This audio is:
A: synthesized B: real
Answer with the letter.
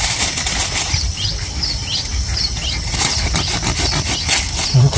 B